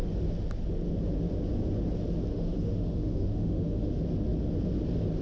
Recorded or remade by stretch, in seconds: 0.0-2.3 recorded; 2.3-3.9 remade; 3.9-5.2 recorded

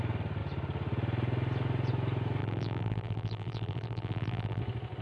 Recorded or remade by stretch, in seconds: 0.0-2.4 recorded; 2.4-4.6 remade; 4.6-5.0 recorded

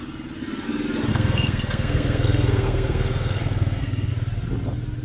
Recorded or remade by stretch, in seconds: 0.0-1.1 recorded; 1.1-4.1 remade; 4.1-5.0 recorded